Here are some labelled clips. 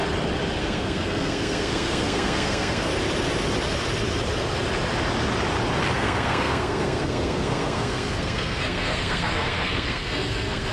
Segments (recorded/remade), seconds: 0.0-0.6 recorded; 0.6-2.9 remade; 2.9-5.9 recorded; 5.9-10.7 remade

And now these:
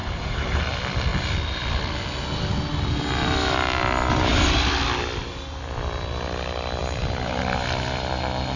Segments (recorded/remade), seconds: 0.0-0.6 remade; 0.6-6.8 recorded; 6.8-7.4 remade; 7.4-8.6 recorded

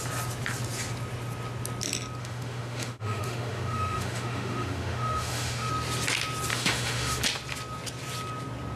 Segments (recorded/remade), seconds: 0.0-2.2 recorded; 2.2-5.7 remade; 5.7-6.5 recorded; 6.5-7.2 remade; 7.2-8.8 recorded

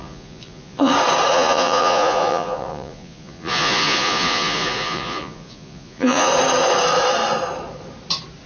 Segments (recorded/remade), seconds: 0.0-0.9 remade; 0.9-1.3 recorded; 1.3-6.3 remade; 6.3-8.5 recorded

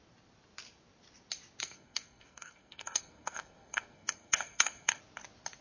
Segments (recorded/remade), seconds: 0.0-1.6 recorded; 1.6-5.0 remade; 5.0-5.6 recorded